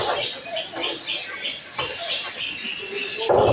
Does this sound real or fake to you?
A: real